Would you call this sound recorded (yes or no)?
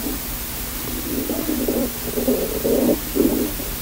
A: yes